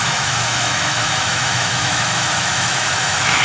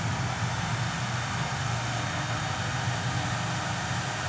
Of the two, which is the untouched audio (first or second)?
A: second